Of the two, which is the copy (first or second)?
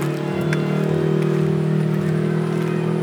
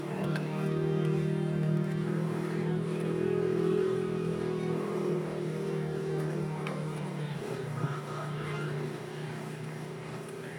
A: second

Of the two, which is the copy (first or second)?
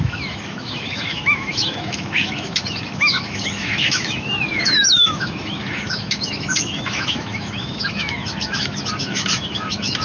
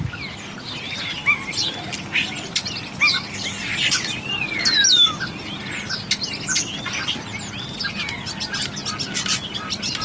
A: first